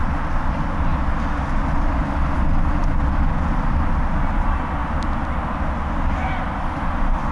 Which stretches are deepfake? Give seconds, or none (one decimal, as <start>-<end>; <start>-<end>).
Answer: none